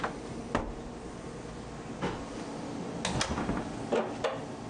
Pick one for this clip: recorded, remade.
recorded